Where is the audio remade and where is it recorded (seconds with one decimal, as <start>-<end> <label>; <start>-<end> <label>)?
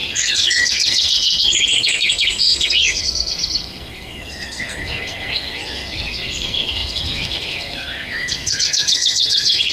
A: 0.0-9.7 remade